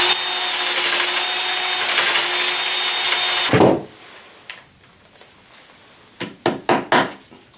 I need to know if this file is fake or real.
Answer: real